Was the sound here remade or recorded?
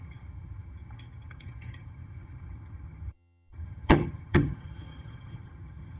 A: remade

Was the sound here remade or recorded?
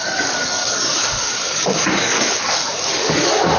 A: remade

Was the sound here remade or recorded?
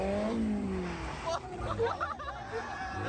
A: recorded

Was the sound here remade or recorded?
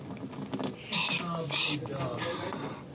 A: recorded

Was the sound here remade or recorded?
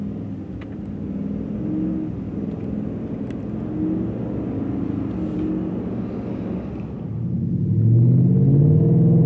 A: recorded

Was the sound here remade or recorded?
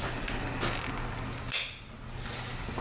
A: recorded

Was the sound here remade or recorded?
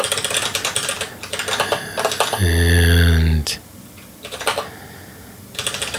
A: recorded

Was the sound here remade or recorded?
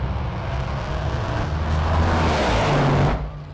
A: recorded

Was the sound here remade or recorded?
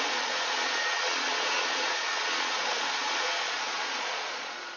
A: remade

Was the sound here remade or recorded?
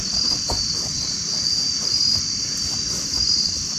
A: recorded